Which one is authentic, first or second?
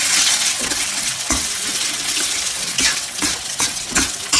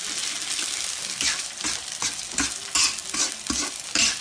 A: second